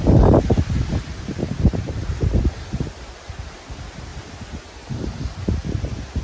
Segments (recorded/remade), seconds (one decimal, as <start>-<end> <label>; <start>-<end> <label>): 0.0-6.2 recorded